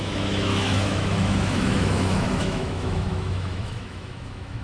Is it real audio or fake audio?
fake